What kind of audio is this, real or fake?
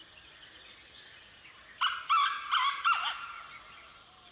real